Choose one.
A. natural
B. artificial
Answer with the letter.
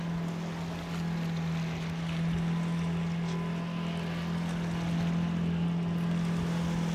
A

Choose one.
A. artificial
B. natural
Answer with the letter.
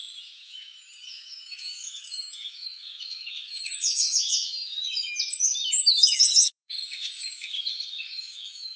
A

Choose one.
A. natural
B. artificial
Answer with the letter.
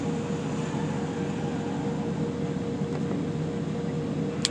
A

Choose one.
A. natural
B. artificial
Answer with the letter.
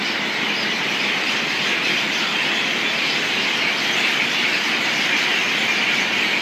A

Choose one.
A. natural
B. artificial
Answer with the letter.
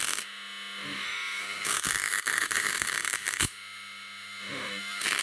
B